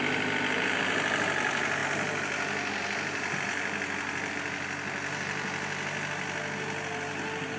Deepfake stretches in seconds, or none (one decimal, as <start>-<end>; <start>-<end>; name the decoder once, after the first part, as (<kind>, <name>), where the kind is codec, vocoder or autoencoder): none